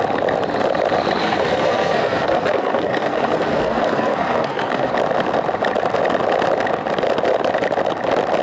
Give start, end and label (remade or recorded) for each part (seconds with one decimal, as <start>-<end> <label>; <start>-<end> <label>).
0.0-1.2 recorded; 1.2-4.9 remade; 4.9-8.4 recorded